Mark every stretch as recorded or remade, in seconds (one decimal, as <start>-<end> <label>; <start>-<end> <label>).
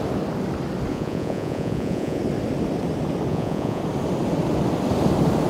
0.0-0.9 recorded; 0.9-2.2 remade; 2.2-3.3 recorded; 3.3-3.8 remade; 3.8-5.5 recorded